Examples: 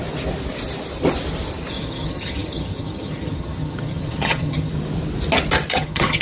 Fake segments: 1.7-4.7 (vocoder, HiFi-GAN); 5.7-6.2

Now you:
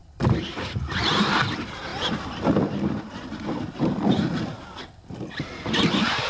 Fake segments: none

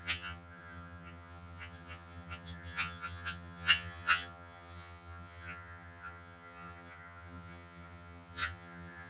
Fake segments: 0.0-9.1 (vocoder, HiFi-GAN)

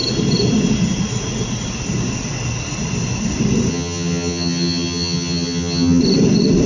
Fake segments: 3.7-6.0 (vocoder, HiFi-GAN)